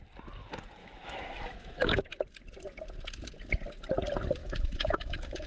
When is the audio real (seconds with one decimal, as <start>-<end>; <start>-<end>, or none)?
0.0-0.8; 2.0-4.4